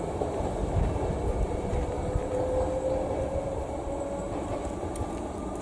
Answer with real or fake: real